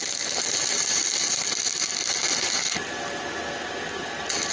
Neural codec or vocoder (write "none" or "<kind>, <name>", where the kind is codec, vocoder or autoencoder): none